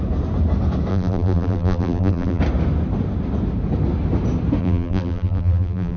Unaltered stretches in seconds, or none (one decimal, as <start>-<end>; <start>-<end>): 0.0-0.9; 2.4-4.6